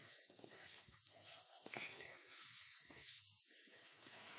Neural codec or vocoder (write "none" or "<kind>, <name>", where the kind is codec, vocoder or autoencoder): codec, SNAC